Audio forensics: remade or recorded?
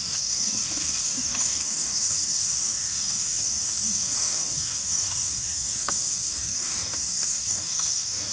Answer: remade